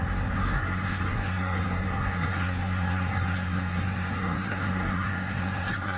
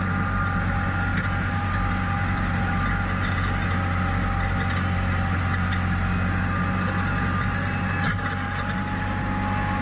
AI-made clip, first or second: first